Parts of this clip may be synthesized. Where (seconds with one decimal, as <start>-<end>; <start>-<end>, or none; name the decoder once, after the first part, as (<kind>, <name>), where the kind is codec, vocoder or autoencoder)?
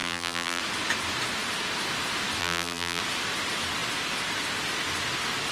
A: 0.0-0.6 (vocoder, BigVGAN v2); 2.4-3.0